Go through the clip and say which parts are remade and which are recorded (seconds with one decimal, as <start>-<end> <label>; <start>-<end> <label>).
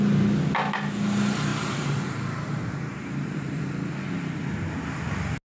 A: 0.0-1.5 recorded; 1.5-4.7 remade; 4.7-5.4 recorded